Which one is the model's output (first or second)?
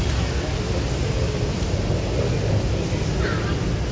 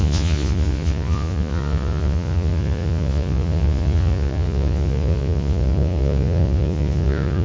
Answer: second